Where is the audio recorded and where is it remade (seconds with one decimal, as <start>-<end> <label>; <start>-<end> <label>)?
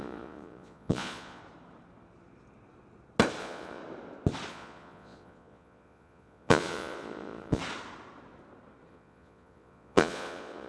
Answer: 0.0-1.4 remade; 1.4-3.4 recorded; 3.4-3.8 remade; 3.8-4.5 recorded; 4.5-7.6 remade; 7.6-8.9 recorded; 8.9-10.7 remade